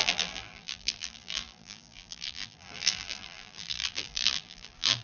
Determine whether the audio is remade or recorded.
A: remade